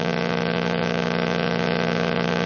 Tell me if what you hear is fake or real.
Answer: fake